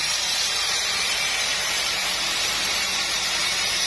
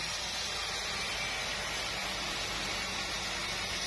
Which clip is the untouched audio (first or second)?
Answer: second